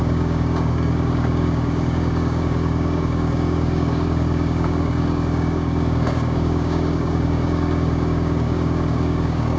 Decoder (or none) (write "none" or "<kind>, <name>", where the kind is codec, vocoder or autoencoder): codec, DAC